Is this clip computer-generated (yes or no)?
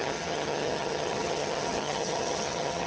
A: yes